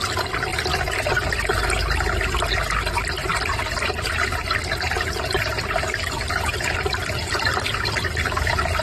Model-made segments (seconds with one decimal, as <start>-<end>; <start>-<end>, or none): 0.5-1.3; 3.3-3.8; 5.5-8.8